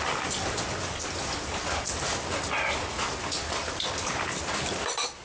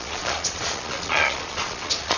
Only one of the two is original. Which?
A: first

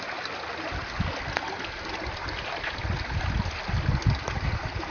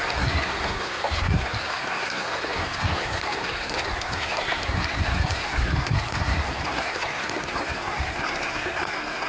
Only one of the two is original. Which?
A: first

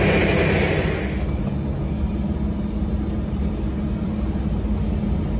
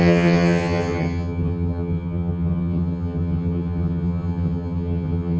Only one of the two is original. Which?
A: first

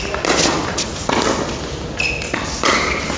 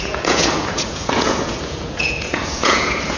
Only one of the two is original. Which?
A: first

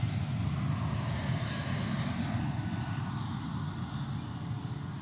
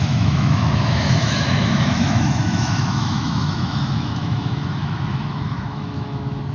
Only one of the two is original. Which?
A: first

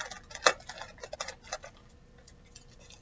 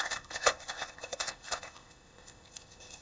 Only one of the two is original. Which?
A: first